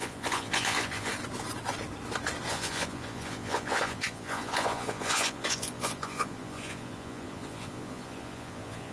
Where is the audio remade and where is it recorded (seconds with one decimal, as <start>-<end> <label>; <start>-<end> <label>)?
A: 0.0-1.1 remade; 1.1-2.5 recorded; 2.5-8.9 remade